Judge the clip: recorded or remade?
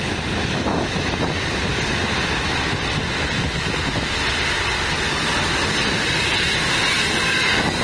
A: recorded